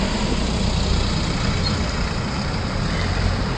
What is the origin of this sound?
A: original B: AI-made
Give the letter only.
A